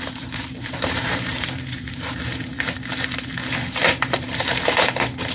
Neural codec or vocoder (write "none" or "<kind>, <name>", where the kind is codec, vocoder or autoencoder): vocoder, BigVGAN v2